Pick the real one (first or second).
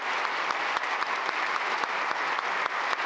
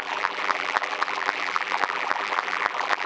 first